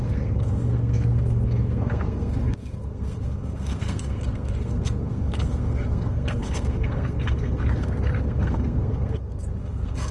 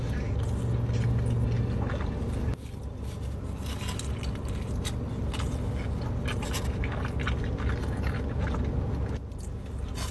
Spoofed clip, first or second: first